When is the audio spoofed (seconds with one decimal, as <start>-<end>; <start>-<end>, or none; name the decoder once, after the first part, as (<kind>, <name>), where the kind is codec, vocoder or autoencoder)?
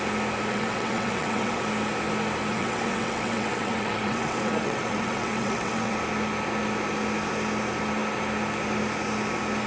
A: 0.5-1.6 (vocoder, WaveNeXt); 2.5-6.0